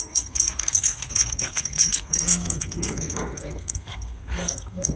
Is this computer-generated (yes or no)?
yes